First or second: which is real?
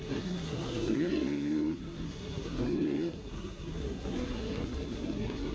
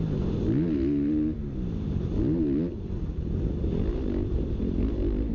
second